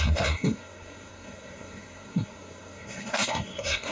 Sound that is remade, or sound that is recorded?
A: remade